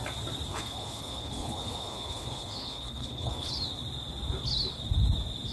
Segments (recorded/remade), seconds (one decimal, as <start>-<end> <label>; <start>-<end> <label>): 0.0-0.5 recorded; 0.5-3.5 remade; 3.5-5.5 recorded